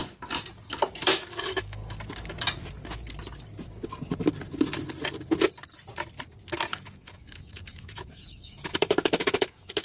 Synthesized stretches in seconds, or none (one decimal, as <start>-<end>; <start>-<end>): 1.0-1.8; 6.7-9.8